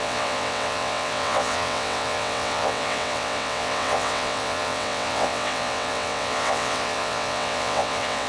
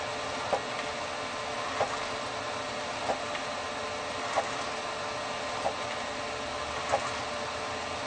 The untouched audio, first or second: second